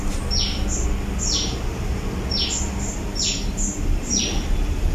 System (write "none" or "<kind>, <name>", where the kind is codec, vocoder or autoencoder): none